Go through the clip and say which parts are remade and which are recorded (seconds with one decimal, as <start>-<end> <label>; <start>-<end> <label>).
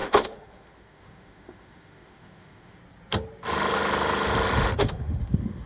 0.0-2.8 remade; 2.8-4.8 recorded; 4.8-5.7 remade